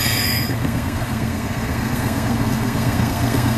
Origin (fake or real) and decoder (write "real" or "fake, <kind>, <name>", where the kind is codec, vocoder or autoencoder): fake, codec, SNAC